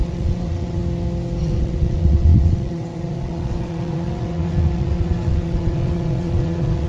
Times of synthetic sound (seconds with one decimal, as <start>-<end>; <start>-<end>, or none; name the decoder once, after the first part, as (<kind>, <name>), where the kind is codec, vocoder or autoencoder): 0.0-0.8 (vocoder, WaveNeXt); 1.4-6.9